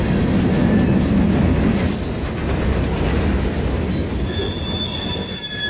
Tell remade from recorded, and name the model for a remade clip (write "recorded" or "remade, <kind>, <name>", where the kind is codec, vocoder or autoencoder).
recorded